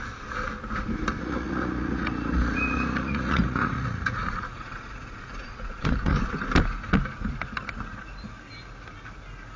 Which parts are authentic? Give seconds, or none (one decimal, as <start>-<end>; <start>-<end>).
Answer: 0.0-1.2; 6.2-9.6